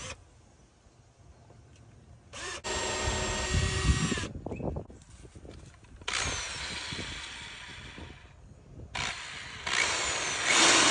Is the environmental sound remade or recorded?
recorded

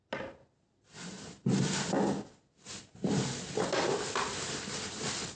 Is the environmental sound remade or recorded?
recorded